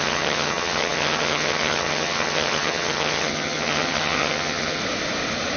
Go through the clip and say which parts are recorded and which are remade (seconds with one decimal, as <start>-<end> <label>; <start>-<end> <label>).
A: 0.0-4.8 remade; 4.8-5.6 recorded